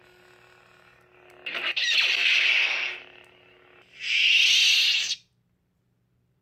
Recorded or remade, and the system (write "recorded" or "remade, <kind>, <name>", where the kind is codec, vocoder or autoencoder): recorded